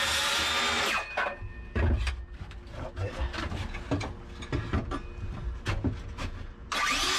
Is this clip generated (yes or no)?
no